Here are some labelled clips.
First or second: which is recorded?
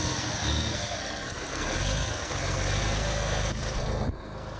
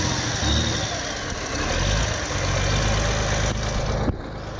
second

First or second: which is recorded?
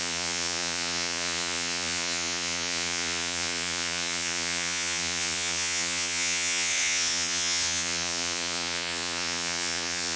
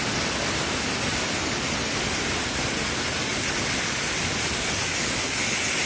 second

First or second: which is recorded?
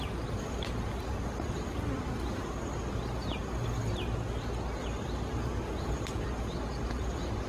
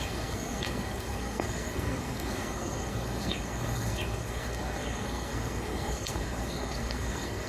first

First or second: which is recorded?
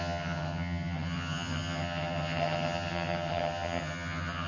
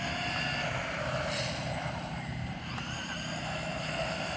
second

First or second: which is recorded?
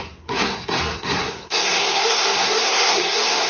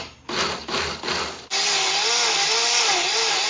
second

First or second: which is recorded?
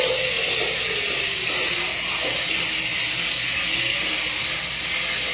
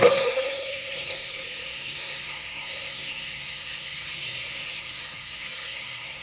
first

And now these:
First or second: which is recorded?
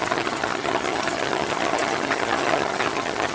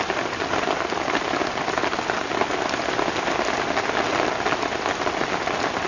second